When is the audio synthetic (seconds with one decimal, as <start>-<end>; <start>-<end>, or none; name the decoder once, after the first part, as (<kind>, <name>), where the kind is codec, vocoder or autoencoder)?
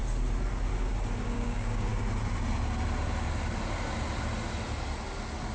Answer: 1.2-1.9 (codec, DAC)